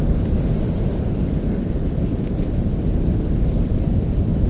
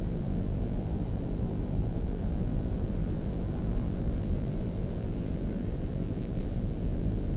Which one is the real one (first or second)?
first